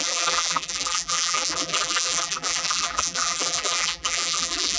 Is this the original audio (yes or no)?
no